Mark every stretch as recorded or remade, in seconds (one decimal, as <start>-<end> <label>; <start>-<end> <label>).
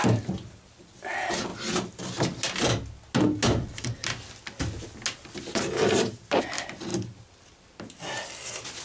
0.0-8.8 recorded